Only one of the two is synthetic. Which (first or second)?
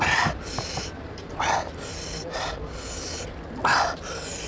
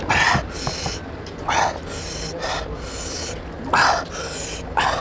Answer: first